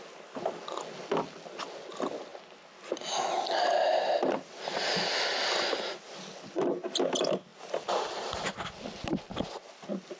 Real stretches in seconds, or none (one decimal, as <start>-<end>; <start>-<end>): 0.0-10.2